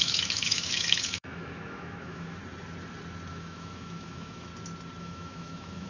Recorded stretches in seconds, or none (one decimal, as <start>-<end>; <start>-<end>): 2.4-3.3; 4.5-5.0